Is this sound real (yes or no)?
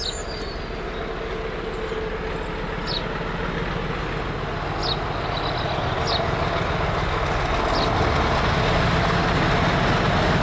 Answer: yes